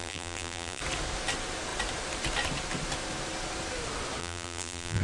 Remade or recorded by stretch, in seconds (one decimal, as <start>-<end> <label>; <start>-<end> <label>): 0.0-0.8 remade; 0.8-4.2 recorded; 4.2-5.0 remade